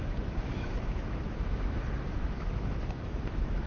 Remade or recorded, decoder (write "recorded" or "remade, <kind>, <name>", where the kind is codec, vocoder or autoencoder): remade, autoencoder, DAC-VAE